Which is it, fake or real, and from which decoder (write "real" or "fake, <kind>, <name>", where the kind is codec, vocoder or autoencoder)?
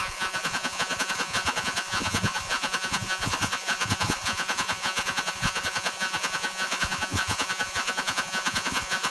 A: fake, vocoder, Vocos